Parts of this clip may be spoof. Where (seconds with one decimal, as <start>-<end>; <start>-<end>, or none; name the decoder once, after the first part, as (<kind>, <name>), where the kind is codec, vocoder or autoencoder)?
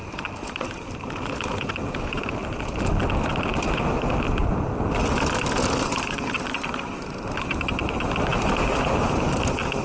0.0-1.1 (vocoder, BigVGAN v2); 2.4-3.0; 4.4-5.0; 8.3-9.1